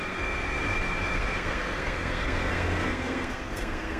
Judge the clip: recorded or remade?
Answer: remade